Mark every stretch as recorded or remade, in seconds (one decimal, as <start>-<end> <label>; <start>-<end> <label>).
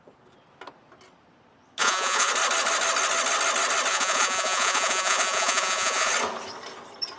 0.0-1.8 recorded; 1.8-2.3 remade; 2.3-3.9 recorded; 3.9-6.1 remade; 6.1-7.2 recorded